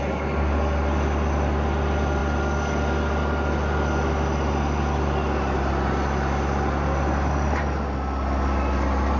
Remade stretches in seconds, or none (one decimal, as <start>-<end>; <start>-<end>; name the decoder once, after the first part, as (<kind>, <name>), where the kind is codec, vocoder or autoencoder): none